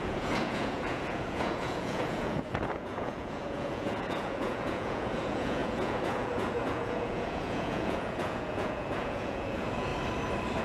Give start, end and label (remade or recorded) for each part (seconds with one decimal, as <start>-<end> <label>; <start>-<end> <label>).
0.0-9.9 remade; 9.9-10.6 recorded